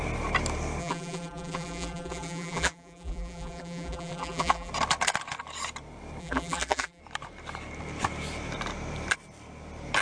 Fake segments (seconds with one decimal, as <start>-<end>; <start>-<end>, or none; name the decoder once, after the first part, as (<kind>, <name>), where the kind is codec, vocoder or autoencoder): 0.8-4.7 (vocoder, BigVGAN v2); 6.2-7.0